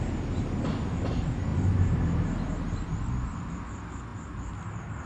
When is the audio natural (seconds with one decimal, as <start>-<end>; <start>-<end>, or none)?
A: 0.0-1.5; 3.5-5.1